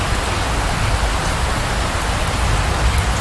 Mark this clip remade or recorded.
recorded